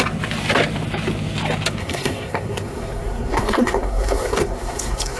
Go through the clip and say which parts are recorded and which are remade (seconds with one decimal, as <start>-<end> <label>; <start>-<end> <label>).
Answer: 0.0-1.8 recorded; 1.8-5.2 remade

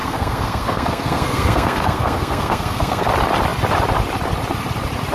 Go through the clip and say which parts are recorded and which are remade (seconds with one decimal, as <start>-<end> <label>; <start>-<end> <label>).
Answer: 0.0-3.1 remade; 3.1-5.1 recorded

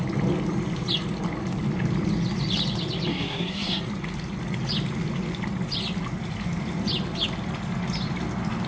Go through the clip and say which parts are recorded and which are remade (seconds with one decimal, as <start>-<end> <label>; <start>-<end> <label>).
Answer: 0.0-3.1 recorded; 3.1-3.8 remade; 3.8-8.7 recorded